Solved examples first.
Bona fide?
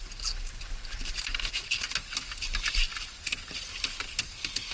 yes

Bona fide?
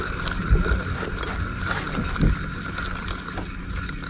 yes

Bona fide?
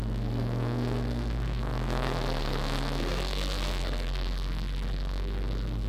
no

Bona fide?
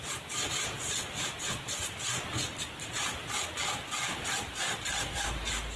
yes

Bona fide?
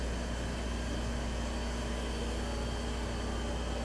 yes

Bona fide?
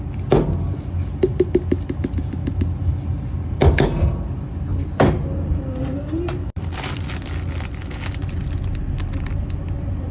yes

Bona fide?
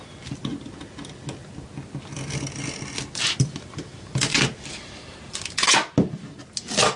yes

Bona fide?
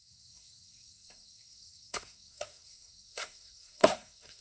no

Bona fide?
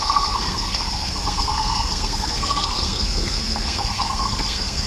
no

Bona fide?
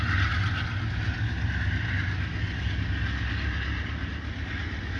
yes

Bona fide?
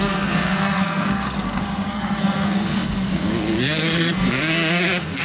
no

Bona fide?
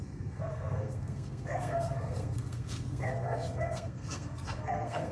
no